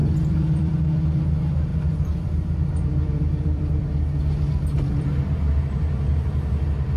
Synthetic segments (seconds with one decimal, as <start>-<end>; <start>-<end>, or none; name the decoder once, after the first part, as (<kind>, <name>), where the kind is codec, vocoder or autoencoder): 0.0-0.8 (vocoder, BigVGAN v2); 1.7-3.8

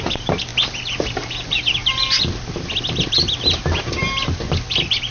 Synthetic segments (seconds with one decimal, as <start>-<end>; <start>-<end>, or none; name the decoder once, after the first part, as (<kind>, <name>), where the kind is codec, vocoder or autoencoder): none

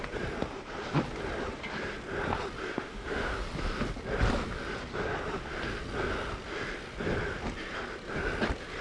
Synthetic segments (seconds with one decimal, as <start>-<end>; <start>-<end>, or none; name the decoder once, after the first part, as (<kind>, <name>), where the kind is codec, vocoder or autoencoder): 2.7-3.3 (autoencoder, DAC-VAE)